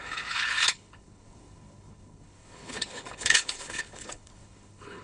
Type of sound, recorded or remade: remade